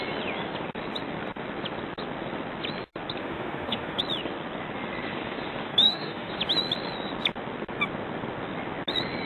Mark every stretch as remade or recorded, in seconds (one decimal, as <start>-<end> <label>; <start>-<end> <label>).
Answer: 0.0-3.2 recorded; 3.2-4.0 remade; 4.0-5.7 recorded; 5.7-6.3 remade; 6.3-9.3 recorded